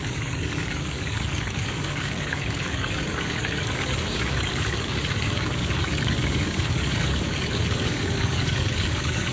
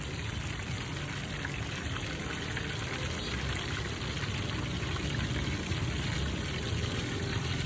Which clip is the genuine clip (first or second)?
second